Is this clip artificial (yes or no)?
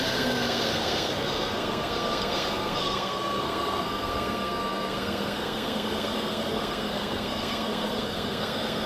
yes